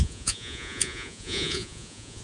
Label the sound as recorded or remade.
remade